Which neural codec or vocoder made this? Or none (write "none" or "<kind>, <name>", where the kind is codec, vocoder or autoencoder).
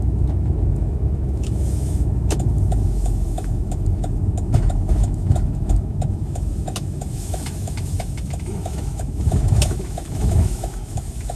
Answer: autoencoder, DAC-VAE